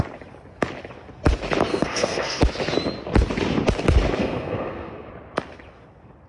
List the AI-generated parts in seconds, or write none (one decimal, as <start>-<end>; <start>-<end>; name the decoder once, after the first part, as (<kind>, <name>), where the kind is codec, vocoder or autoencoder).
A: 1.7-2.4 (codec, SNAC); 4.2-5.1